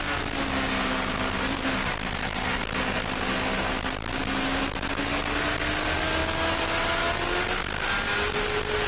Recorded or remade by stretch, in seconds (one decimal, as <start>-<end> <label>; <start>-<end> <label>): 0.0-8.9 recorded